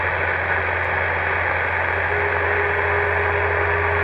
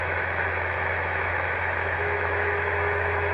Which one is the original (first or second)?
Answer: first